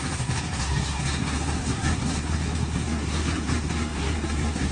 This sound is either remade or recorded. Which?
remade